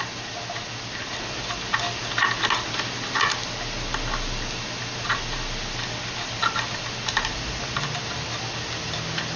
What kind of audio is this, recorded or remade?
recorded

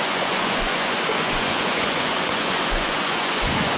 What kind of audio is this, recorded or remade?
remade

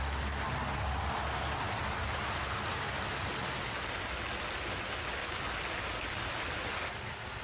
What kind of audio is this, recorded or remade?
recorded